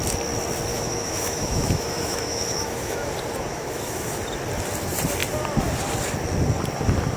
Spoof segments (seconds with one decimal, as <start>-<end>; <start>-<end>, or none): 0.7-3.1; 3.5-4.2